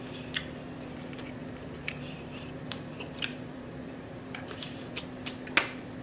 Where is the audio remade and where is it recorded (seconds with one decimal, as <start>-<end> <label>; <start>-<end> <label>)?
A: 0.0-1.4 recorded; 1.4-5.0 remade; 5.0-6.0 recorded